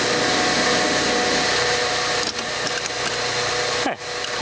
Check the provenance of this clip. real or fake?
real